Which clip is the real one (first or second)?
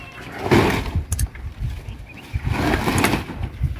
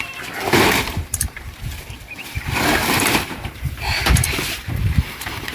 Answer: first